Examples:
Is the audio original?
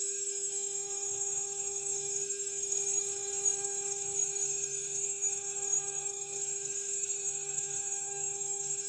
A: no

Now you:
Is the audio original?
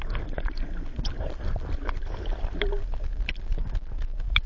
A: yes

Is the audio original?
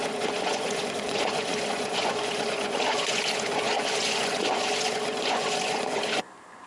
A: no